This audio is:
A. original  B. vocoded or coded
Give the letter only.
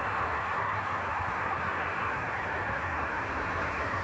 B